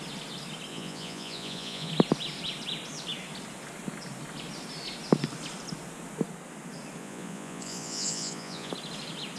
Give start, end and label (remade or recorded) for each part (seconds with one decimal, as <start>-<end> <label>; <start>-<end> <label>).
0.0-0.7 recorded; 0.7-1.9 remade; 1.9-7.0 recorded; 7.0-8.7 remade; 8.7-9.4 recorded